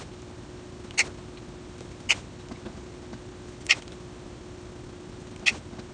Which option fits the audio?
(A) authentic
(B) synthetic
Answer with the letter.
A